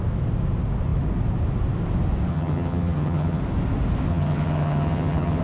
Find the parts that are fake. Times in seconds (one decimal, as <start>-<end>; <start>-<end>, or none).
2.3-3.4; 4.1-5.4

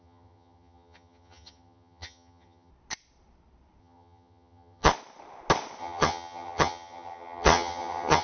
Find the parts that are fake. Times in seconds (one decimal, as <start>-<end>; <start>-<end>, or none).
0.0-2.7; 3.8-4.9; 5.8-8.2

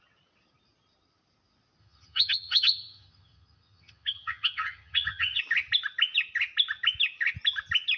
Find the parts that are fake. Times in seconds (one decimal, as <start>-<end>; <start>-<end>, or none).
1.8-5.4